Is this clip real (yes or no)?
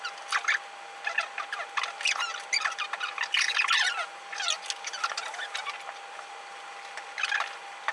yes